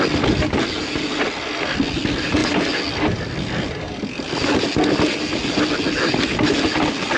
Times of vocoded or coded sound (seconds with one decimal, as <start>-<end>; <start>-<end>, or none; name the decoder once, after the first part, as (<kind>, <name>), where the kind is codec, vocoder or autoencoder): none